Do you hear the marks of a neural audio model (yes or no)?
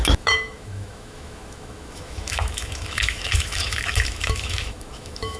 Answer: yes